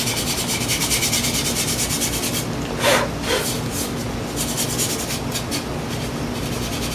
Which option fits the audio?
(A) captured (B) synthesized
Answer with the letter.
A